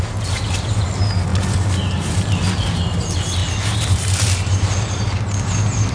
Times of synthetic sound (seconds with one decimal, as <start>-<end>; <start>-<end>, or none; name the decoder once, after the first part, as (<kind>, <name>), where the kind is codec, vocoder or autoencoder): 0.0-1.3 (vocoder, BigVGAN v2); 2.1-5.9